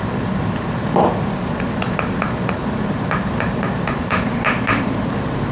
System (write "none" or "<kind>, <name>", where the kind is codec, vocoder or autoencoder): none